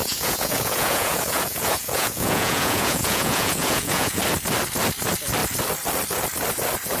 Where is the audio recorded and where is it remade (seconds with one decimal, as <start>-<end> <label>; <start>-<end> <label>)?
0.0-4.2 remade; 4.2-7.0 recorded